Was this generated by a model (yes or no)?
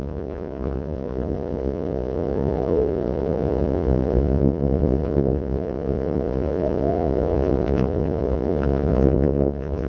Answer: yes